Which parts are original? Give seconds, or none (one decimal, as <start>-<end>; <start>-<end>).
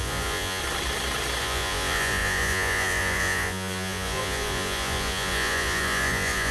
0.6-1.4